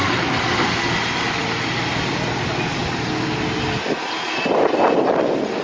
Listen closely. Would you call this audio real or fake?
real